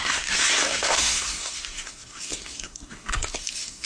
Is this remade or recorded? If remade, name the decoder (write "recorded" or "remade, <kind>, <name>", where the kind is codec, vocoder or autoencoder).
remade, codec, SNAC